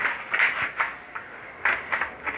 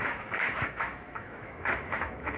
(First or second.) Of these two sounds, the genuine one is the first